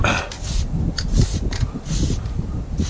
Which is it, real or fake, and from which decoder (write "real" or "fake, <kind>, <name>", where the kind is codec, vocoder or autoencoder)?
real